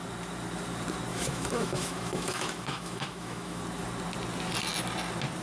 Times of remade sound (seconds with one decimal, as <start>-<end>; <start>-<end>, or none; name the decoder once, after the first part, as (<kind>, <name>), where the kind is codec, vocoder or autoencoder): 1.1-3.6 (autoencoder, DAC-VAE)